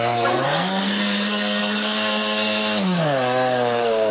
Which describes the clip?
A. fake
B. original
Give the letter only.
A